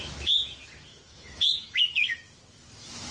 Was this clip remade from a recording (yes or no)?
yes